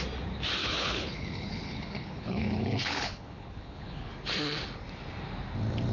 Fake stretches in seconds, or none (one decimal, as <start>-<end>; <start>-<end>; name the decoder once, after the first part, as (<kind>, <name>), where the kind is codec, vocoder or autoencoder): 0.6-4.1 (codec, HILCodec)